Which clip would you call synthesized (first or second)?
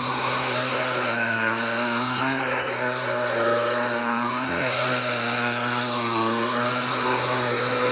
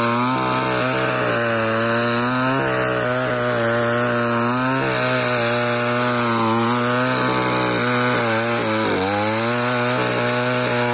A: first